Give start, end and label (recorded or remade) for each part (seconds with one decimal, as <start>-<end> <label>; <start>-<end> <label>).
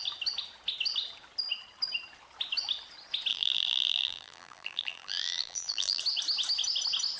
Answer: 0.0-3.3 recorded; 3.3-6.0 remade; 6.0-7.2 recorded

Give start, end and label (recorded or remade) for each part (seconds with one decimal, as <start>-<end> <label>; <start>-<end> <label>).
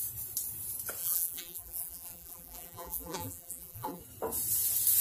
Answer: 0.0-1.0 recorded; 1.0-4.0 remade; 4.0-5.0 recorded